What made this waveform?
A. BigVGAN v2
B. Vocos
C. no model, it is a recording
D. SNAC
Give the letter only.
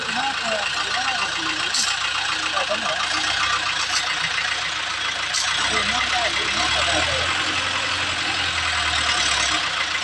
C